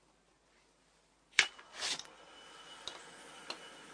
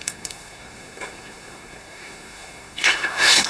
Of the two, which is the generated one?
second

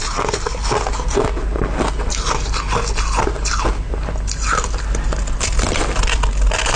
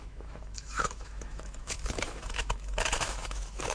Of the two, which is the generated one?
second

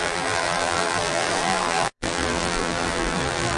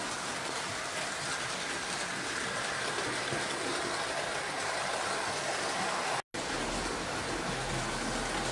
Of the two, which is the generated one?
first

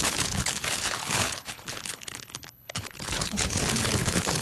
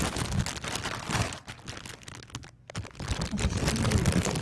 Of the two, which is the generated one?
first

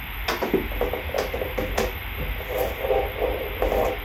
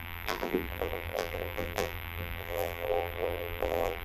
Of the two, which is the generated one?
second